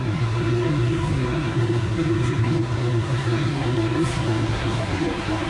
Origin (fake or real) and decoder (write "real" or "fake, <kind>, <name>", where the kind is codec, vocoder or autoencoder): fake, codec, SNAC